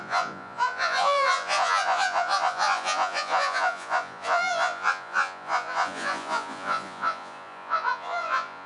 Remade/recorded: remade